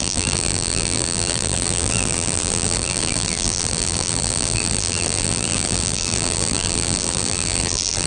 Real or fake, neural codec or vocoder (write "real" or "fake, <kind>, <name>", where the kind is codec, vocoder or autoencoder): fake, vocoder, BigVGAN v2